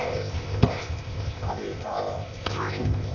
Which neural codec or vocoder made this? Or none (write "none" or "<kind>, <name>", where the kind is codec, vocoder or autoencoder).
codec, ZipCodec